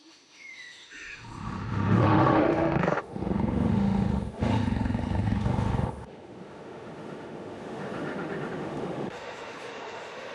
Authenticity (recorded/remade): remade